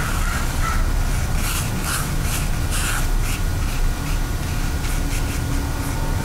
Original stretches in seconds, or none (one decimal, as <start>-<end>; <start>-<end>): 0.0-6.2